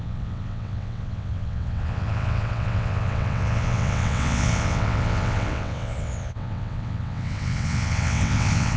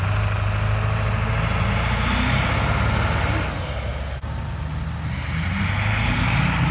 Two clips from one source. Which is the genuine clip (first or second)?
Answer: second